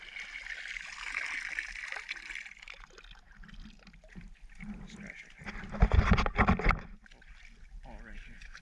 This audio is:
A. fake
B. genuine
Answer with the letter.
B